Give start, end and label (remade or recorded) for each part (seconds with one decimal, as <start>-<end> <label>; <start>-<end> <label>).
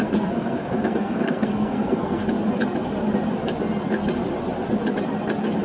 0.0-2.2 remade; 2.2-5.6 recorded